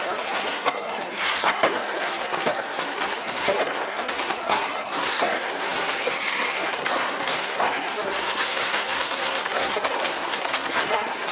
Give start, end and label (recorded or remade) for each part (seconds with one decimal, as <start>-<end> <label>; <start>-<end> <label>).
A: 0.0-11.3 remade